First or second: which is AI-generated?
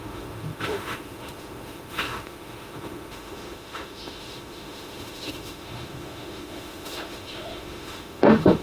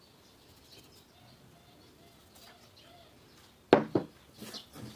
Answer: first